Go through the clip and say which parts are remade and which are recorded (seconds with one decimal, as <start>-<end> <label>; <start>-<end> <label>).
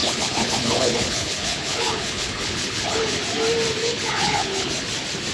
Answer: 0.0-3.2 remade; 3.2-3.8 recorded; 3.8-4.7 remade; 4.7-5.3 recorded